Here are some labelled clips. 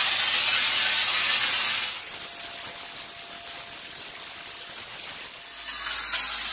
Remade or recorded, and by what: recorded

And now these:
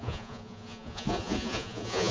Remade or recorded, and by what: remade, vocoder, Vocos